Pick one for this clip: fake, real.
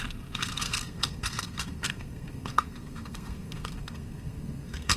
fake